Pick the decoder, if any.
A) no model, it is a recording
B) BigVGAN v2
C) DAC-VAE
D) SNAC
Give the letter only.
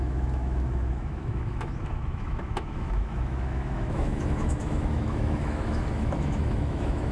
C